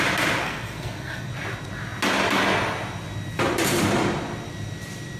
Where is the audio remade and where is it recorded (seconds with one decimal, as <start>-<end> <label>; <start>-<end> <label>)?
0.0-0.4 recorded; 0.4-1.3 remade; 1.3-5.2 recorded